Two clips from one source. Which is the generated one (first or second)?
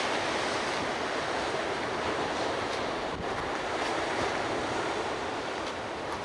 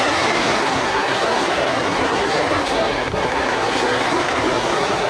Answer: second